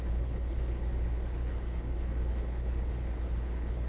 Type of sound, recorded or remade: remade